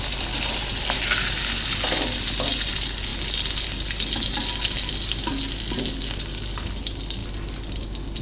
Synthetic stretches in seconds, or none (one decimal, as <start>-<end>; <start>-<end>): none